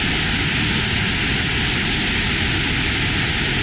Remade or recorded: recorded